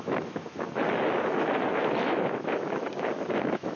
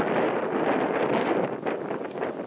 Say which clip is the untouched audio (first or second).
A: second